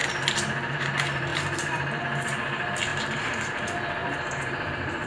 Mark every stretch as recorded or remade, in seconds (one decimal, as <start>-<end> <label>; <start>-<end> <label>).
0.0-0.7 recorded; 0.7-5.1 remade